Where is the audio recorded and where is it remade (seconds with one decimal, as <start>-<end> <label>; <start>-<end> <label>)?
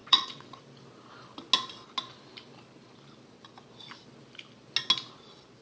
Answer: 0.0-0.6 remade; 0.6-5.6 recorded